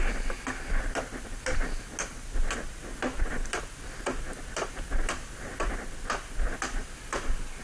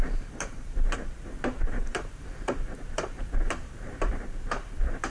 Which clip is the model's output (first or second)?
second